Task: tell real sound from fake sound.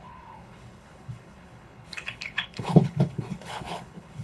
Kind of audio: fake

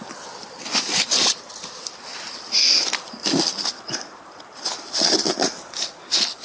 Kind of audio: real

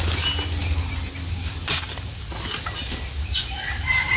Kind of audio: real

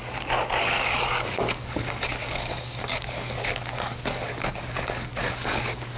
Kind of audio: fake